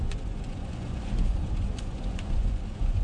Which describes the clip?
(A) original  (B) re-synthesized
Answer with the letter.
B